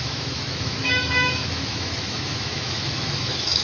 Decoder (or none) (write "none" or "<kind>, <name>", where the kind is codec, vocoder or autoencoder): autoencoder, DAC-VAE